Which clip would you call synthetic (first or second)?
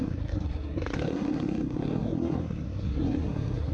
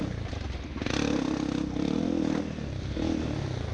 first